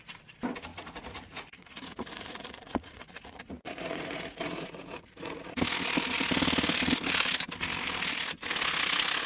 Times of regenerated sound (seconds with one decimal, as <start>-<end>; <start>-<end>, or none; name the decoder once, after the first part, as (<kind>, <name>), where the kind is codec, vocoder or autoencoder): 0.7-5.6 (vocoder, Vocos)

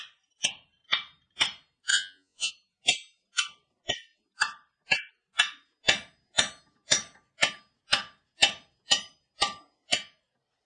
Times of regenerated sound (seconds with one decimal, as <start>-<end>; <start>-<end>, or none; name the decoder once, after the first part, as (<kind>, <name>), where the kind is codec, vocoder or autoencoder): 1.9-2.5 (vocoder, Vocos)

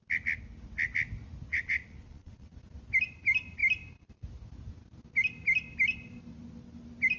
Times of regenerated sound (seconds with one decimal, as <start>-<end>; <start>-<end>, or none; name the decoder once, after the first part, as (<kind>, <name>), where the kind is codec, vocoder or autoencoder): 1.5-2.5 (vocoder, Vocos)